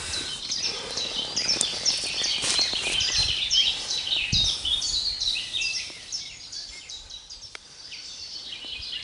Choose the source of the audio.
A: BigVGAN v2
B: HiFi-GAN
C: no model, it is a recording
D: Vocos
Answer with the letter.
A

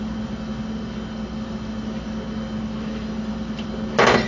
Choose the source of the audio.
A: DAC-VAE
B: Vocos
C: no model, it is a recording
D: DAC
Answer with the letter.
C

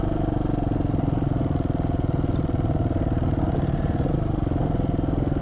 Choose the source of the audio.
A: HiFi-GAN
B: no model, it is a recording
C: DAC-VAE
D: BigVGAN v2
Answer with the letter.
B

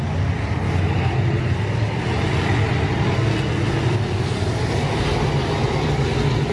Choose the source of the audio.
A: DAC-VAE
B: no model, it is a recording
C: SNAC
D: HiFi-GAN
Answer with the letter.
B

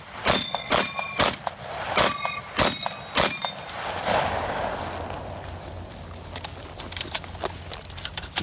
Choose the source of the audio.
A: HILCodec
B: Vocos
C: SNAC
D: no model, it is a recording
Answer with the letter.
D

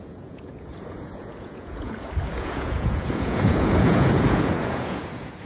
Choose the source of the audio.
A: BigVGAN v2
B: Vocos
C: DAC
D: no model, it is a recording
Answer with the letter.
B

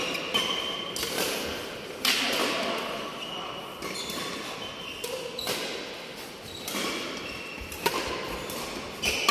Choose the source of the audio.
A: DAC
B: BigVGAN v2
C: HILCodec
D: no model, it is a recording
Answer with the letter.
D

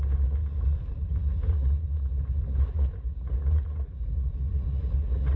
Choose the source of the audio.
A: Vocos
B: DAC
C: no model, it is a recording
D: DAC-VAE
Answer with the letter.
A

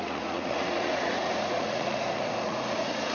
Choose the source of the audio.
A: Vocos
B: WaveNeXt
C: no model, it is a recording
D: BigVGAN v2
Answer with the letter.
A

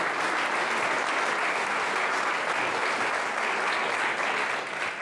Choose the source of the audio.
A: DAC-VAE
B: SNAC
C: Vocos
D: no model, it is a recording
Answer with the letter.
D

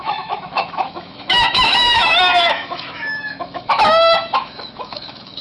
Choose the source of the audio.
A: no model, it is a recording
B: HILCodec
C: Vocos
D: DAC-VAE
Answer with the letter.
D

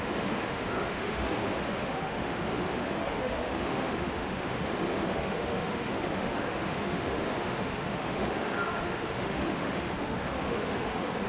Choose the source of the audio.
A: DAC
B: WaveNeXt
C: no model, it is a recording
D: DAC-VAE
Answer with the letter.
D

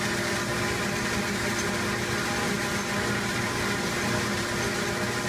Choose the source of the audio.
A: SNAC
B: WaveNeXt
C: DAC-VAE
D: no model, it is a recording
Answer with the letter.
D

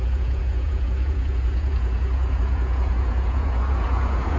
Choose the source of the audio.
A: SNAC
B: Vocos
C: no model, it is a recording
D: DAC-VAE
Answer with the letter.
B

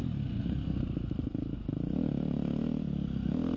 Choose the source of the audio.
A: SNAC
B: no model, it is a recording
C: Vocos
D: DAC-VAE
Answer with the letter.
B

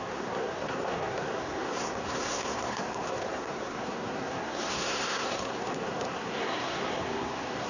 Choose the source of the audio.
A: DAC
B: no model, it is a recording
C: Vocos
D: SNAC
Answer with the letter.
D